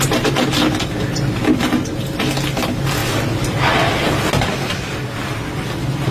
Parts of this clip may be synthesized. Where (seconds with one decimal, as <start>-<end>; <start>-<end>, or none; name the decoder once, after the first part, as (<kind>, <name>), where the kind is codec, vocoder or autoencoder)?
none